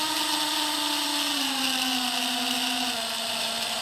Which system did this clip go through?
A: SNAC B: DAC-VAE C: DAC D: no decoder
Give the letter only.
D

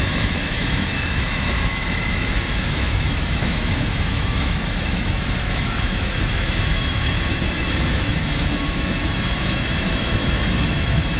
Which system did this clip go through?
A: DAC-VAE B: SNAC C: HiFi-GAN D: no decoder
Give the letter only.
A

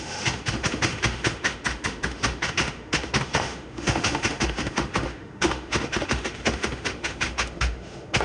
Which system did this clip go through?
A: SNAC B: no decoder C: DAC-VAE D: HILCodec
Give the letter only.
C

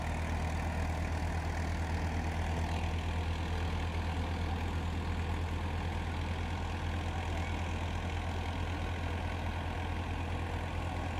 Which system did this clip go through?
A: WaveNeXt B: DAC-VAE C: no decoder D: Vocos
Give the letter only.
C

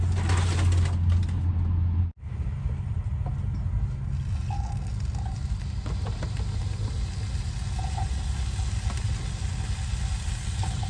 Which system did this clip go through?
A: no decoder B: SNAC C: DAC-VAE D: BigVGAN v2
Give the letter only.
A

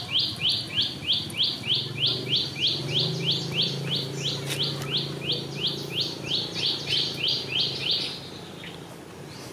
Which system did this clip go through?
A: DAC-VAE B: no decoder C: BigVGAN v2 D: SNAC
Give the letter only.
B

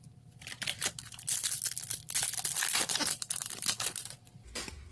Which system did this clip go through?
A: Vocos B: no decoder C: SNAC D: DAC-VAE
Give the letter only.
B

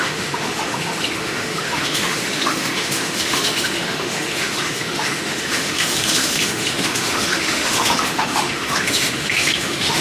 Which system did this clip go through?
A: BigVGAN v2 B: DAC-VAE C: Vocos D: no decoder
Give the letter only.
B